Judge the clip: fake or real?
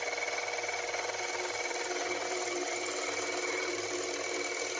real